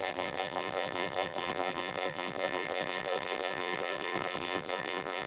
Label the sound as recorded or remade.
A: remade